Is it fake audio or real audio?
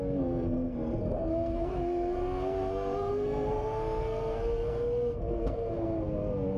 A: fake